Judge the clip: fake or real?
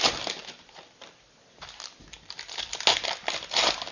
real